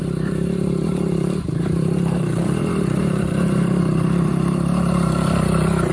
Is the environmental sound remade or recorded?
remade